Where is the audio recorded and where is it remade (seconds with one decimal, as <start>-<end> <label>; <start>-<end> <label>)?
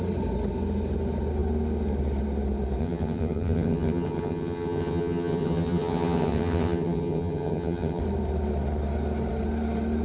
0.0-2.8 recorded; 2.8-8.0 remade; 8.0-10.0 recorded